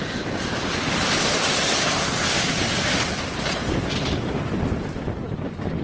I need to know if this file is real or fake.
real